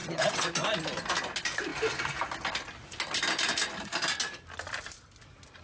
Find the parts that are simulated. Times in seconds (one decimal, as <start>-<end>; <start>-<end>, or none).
0.0-0.5